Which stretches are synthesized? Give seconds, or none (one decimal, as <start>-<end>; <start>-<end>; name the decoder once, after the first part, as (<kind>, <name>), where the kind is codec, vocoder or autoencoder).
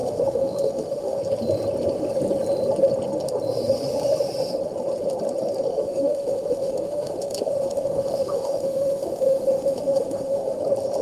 0.0-1.2 (autoencoder, DAC-VAE); 5.7-10.6